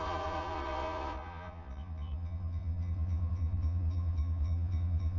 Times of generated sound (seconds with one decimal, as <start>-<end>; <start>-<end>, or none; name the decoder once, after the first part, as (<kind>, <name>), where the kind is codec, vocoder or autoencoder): 0.0-5.2 (vocoder, Vocos)